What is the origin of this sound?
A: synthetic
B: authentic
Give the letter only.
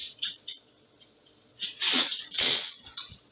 A